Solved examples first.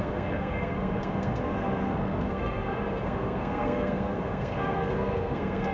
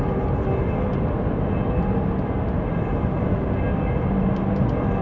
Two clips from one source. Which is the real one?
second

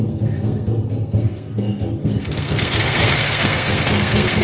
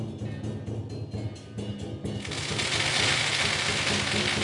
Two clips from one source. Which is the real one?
second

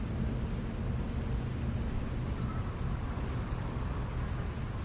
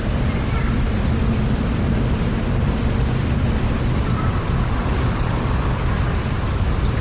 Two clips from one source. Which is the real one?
first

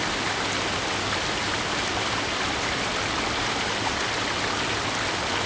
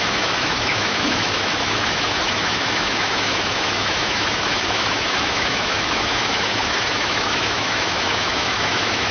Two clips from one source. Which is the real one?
first